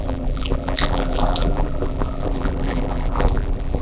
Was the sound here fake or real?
fake